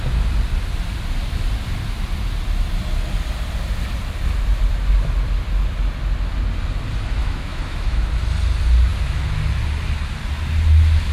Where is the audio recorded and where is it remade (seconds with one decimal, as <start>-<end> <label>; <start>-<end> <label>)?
0.0-7.2 recorded; 7.2-8.1 remade; 8.1-11.1 recorded